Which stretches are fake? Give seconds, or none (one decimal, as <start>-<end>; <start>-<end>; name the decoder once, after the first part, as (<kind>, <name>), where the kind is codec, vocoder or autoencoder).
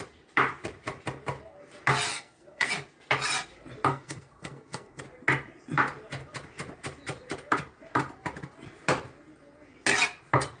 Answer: 2.1-2.7 (codec, SNAC); 3.9-5.0